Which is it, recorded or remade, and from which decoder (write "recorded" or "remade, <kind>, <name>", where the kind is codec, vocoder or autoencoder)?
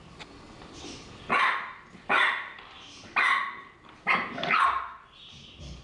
recorded